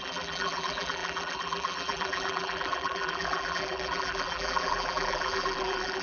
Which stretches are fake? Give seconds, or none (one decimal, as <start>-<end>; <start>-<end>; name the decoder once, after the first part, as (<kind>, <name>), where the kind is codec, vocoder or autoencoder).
0.0-6.0 (vocoder, BigVGAN v2)